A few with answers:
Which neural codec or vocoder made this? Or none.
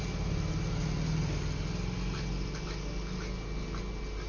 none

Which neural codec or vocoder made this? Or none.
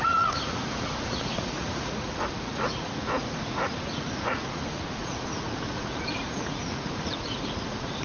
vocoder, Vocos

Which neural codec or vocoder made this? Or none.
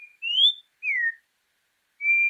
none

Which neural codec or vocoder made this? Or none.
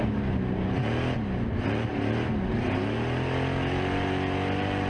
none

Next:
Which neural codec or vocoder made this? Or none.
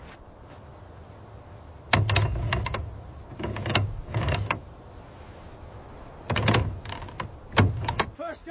none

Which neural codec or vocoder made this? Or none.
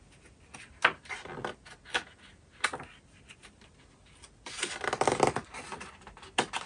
none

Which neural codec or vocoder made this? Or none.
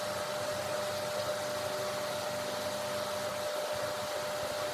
none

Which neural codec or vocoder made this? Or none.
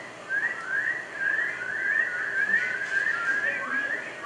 none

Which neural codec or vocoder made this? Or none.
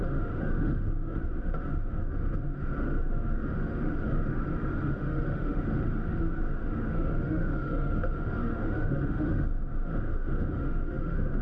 autoencoder, DAC-VAE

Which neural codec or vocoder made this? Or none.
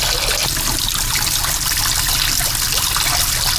none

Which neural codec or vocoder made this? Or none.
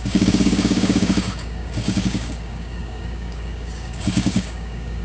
codec, DAC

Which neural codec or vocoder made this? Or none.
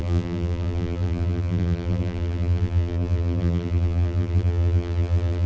vocoder, BigVGAN v2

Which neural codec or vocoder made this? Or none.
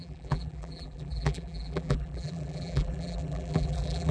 vocoder, BigVGAN v2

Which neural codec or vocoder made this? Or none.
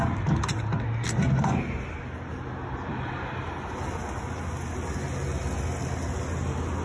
none